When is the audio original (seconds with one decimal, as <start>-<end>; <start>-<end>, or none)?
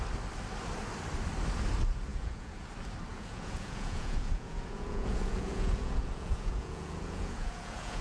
0.0-2.1; 2.7-3.1